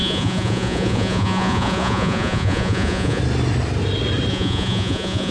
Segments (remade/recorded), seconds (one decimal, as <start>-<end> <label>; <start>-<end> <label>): 0.0-3.2 remade; 3.2-4.3 recorded; 4.3-5.3 remade